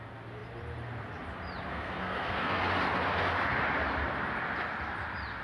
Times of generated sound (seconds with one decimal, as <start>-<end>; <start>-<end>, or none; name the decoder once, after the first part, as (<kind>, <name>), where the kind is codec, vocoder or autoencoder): 1.7-2.6 (codec, SNAC)